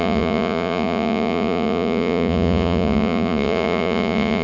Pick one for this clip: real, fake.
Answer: fake